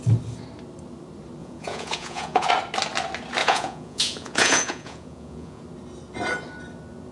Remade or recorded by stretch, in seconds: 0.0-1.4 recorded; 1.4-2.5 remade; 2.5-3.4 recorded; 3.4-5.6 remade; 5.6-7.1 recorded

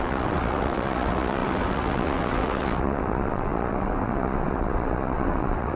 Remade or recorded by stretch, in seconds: 0.0-5.8 remade

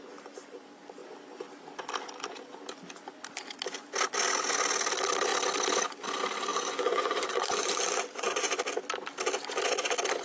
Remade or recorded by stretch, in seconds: 0.0-6.5 recorded; 6.5-8.6 remade; 8.6-10.2 recorded

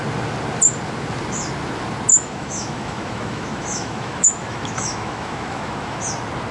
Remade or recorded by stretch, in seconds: 0.0-2.1 recorded; 2.1-6.0 remade; 6.0-6.5 recorded